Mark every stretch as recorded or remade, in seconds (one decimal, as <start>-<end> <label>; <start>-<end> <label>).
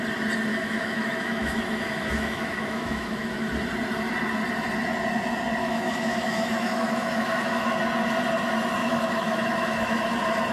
0.0-0.5 recorded; 0.5-3.5 remade; 3.5-5.6 recorded; 5.6-7.8 remade; 7.8-8.8 recorded; 8.8-10.0 remade; 10.0-10.5 recorded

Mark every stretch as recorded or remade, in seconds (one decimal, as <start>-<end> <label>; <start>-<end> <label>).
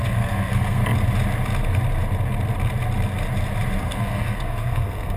0.0-0.8 remade; 0.8-3.8 recorded; 3.8-5.2 remade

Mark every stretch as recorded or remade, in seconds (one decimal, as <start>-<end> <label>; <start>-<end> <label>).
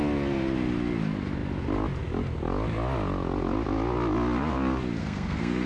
0.0-5.0 recorded; 5.0-5.7 remade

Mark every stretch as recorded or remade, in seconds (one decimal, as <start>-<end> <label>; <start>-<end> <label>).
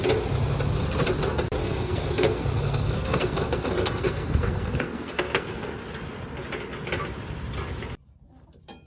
0.0-1.6 recorded; 1.6-5.7 remade; 5.7-8.9 recorded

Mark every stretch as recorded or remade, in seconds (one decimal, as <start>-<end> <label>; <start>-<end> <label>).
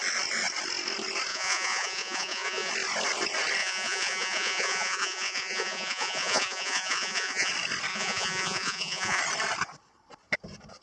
0.0-1.3 recorded; 1.3-2.7 remade; 2.7-3.6 recorded; 3.6-7.5 remade; 7.5-7.9 recorded; 7.9-9.2 remade; 9.2-10.8 recorded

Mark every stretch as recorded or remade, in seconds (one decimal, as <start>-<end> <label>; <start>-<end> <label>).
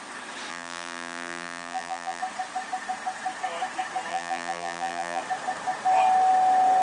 0.0-0.5 recorded; 0.5-2.2 remade; 2.2-4.1 recorded; 4.1-5.2 remade; 5.2-6.8 recorded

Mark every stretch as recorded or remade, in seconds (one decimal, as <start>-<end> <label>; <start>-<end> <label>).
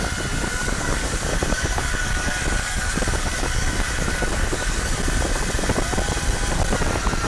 0.0-0.6 recorded; 0.6-5.0 remade; 5.0-7.3 recorded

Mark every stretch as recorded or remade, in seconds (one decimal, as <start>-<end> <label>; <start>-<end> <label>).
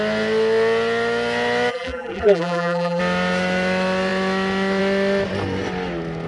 0.0-1.7 recorded; 1.7-3.0 remade; 3.0-6.3 recorded